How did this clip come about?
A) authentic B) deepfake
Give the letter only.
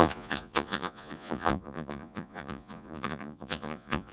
B